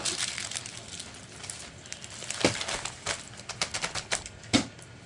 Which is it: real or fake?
real